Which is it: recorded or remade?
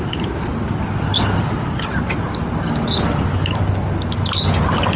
recorded